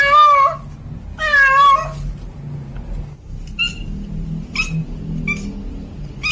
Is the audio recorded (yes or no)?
yes